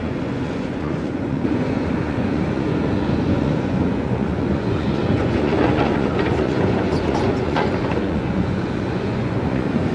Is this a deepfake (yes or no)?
yes